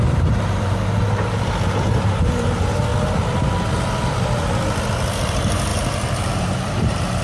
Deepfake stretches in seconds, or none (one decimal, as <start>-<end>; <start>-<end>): 0.0-2.9; 5.1-7.2